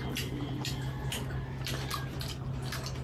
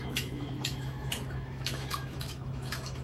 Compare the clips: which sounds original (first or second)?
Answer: first